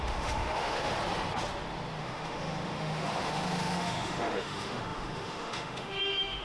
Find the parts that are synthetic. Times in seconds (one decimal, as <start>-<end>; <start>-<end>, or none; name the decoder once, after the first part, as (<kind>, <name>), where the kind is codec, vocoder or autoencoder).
0.0-0.9 (autoencoder, DAC-VAE); 2.0-6.4